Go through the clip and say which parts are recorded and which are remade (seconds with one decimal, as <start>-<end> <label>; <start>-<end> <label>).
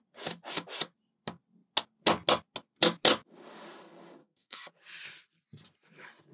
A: 0.0-4.2 recorded; 4.2-4.7 remade; 4.7-6.3 recorded